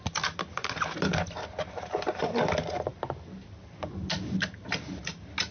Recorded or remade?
recorded